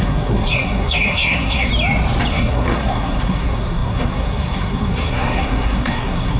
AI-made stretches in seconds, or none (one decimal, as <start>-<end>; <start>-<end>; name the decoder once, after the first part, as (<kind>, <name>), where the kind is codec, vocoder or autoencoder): 0.0-1.7 (codec, SNAC); 2.3-6.4